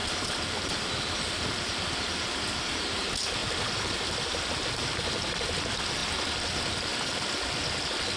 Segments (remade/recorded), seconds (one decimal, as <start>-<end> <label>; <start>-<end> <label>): 0.0-6.9 recorded; 6.9-7.4 remade; 7.4-8.2 recorded